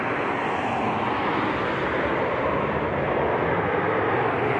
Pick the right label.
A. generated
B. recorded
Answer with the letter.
B